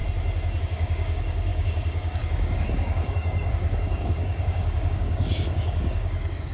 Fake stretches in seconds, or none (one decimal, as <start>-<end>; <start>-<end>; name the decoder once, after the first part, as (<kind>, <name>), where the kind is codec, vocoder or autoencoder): 0.6-6.5 (codec, DAC)